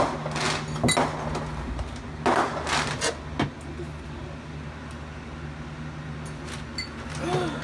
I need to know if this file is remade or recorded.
recorded